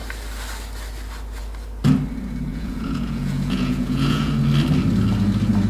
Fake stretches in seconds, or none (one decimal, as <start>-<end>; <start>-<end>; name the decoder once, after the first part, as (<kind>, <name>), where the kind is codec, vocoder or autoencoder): 2.5-4.4 (vocoder, Vocos)